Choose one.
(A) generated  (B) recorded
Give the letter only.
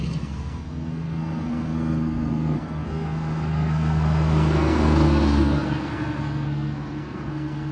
A